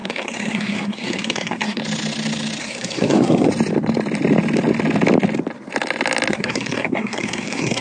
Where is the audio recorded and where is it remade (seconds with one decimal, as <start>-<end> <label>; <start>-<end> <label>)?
0.0-1.8 remade; 1.8-2.6 recorded; 2.6-3.5 remade; 3.5-6.3 recorded; 6.3-7.8 remade